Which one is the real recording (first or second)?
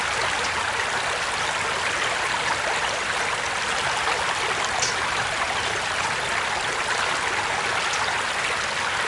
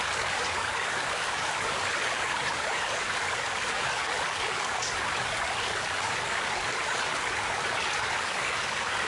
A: first